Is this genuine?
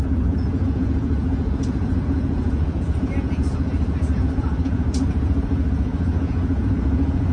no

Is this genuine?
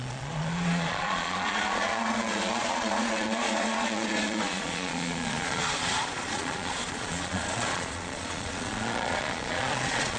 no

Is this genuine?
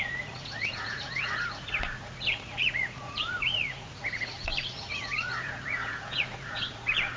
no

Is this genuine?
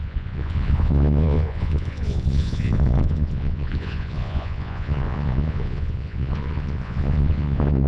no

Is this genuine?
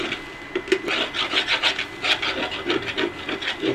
yes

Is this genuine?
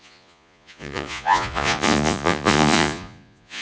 no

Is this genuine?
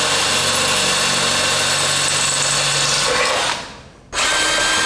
yes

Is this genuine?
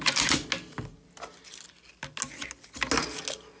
yes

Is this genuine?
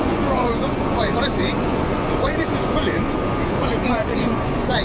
no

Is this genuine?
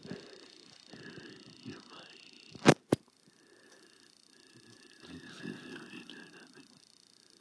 yes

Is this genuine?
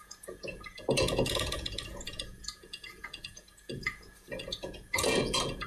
no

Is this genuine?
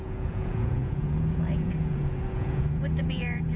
no